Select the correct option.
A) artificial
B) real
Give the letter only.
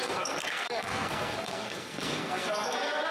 A